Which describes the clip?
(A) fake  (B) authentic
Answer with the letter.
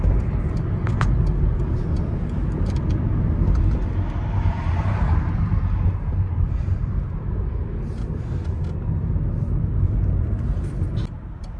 B